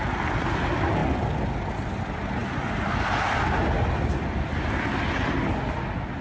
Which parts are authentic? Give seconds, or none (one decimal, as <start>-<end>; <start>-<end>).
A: 0.0-6.2

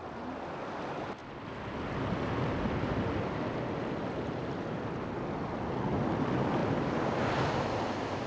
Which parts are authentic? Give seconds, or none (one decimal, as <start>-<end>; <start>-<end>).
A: 0.0-8.3

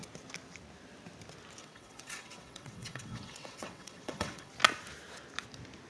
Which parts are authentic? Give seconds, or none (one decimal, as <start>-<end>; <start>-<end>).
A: 0.0-1.6; 4.5-5.9

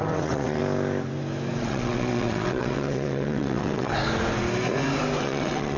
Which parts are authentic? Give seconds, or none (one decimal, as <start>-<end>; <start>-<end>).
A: 0.6-1.6; 3.9-5.2